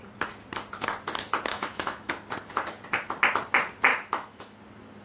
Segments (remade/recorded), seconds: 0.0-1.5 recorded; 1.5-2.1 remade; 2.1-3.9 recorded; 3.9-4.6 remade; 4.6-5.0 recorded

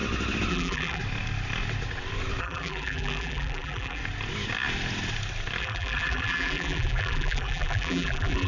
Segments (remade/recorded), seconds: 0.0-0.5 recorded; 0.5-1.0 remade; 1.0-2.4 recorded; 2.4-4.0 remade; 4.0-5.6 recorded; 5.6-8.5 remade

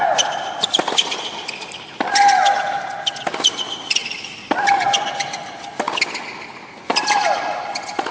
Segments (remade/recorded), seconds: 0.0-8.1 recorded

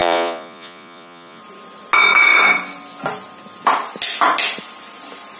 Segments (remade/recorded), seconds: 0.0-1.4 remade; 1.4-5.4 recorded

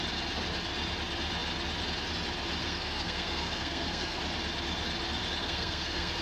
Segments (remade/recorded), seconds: 0.0-2.6 recorded; 2.6-4.2 remade; 4.2-5.4 recorded; 5.4-6.2 remade

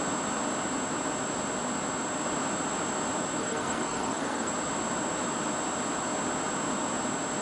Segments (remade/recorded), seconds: 0.0-3.4 recorded; 3.4-4.5 remade; 4.5-7.4 recorded

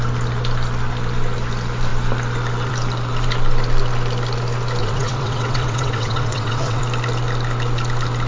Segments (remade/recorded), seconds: 0.0-4.8 recorded; 4.8-6.8 remade; 6.8-8.3 recorded

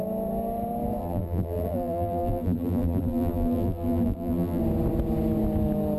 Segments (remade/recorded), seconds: 0.0-1.0 recorded; 1.0-4.6 remade; 4.6-6.0 recorded